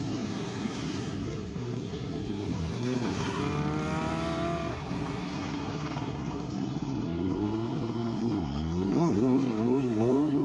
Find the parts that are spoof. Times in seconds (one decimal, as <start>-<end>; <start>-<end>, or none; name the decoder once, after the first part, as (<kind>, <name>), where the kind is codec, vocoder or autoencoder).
0.0-3.4 (codec, SNAC); 4.7-10.4